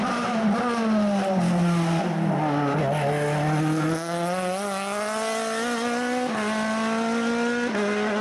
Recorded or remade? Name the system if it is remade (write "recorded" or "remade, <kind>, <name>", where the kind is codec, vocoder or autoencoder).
recorded